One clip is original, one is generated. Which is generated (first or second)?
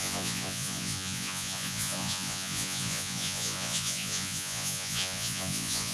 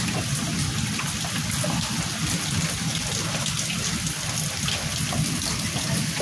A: first